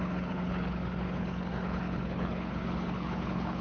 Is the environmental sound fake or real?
fake